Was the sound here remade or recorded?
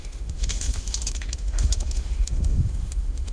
remade